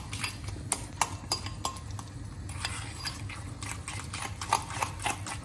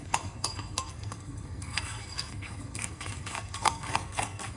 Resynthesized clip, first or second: second